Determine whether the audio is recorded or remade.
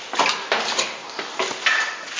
recorded